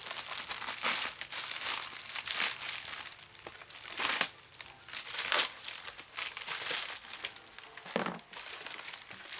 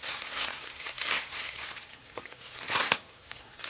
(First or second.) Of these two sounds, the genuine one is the first